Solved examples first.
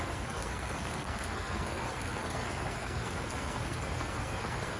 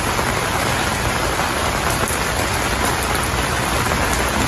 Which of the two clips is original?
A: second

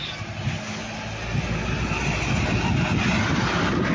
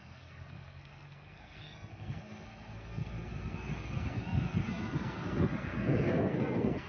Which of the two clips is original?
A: first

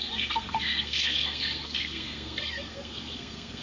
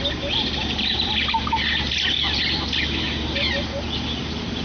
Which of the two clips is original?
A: second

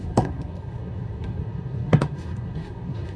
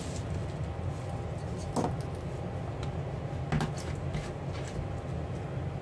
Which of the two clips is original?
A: second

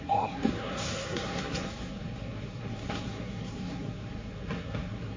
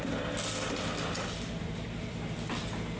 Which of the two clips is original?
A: second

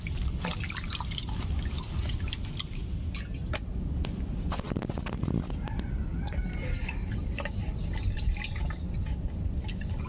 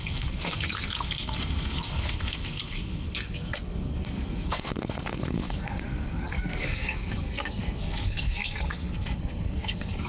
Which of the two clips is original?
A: first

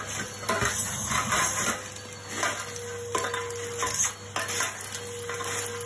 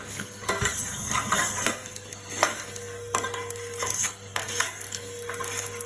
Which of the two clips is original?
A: first